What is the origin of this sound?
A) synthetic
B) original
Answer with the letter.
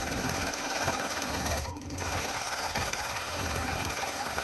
A